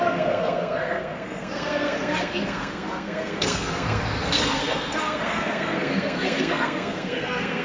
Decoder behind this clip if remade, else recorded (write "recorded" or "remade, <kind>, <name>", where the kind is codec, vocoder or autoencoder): remade, codec, SNAC